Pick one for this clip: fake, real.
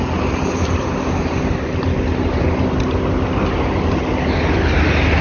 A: real